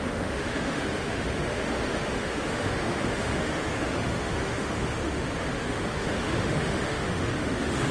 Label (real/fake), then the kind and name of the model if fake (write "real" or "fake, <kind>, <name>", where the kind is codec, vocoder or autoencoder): fake, autoencoder, DAC-VAE